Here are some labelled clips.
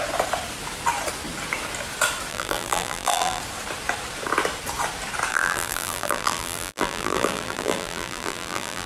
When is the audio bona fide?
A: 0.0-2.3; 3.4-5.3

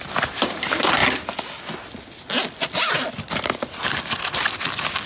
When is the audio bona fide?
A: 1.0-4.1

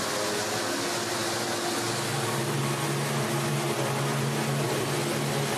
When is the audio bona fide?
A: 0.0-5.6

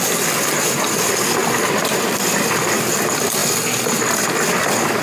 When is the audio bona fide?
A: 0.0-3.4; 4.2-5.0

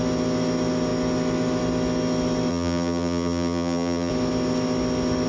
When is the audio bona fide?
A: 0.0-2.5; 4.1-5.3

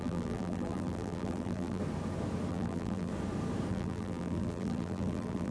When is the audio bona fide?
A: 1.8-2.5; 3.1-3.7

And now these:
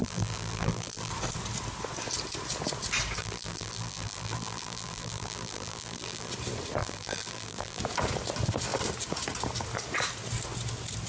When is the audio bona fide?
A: 1.1-3.2; 6.3-6.8; 7.8-11.1